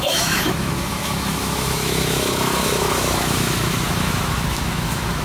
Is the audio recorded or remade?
remade